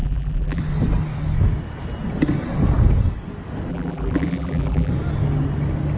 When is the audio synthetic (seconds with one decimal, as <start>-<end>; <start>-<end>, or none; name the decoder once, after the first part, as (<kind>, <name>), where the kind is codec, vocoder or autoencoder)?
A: 0.0-0.6 (vocoder, BigVGAN v2); 3.7-4.9